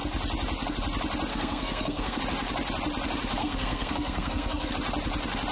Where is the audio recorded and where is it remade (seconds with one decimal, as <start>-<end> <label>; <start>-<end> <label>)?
0.0-1.3 recorded; 1.3-2.2 remade; 2.2-3.4 recorded; 3.4-4.7 remade; 4.7-5.5 recorded